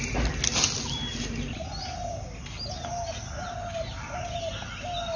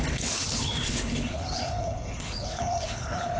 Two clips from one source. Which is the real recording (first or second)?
first